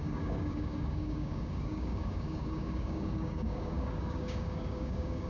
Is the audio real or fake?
fake